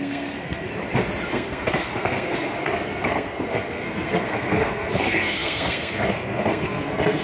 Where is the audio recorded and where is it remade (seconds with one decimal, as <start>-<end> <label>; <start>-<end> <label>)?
0.0-0.7 remade; 0.7-1.3 recorded; 1.3-7.2 remade